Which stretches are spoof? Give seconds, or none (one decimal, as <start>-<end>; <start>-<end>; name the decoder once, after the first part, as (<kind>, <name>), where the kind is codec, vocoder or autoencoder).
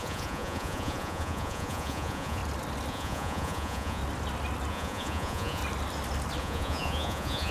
0.0-2.4 (vocoder, Vocos); 2.9-4.0; 4.7-5.6; 6.4-7.5